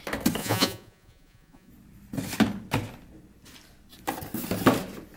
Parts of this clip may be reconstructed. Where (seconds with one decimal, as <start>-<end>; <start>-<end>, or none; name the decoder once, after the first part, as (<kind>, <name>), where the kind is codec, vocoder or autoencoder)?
0.4-1.7 (vocoder, Vocos)